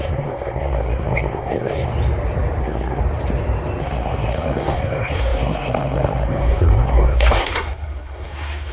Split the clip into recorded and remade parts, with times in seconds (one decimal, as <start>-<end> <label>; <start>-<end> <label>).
0.0-1.9 remade; 1.9-2.6 recorded; 2.6-3.0 remade; 3.0-3.8 recorded; 3.8-8.7 remade